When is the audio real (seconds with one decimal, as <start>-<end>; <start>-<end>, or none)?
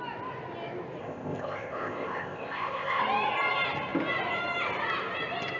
0.0-1.0; 3.0-5.6